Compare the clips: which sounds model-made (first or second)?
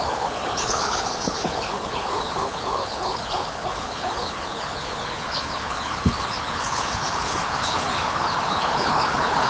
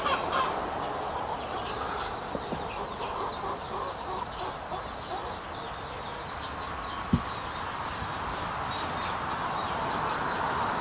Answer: first